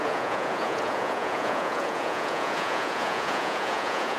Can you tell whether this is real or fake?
fake